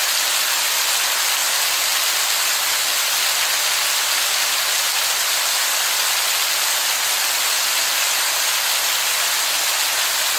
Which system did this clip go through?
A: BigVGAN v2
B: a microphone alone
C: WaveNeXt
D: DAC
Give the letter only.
B